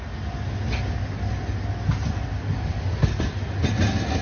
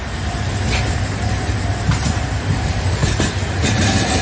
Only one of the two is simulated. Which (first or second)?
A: second